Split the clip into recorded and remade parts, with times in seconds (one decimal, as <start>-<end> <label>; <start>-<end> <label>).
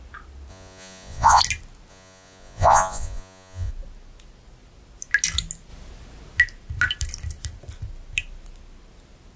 0.0-0.5 recorded; 0.5-1.4 remade; 1.4-1.9 recorded; 1.9-3.7 remade; 3.7-9.4 recorded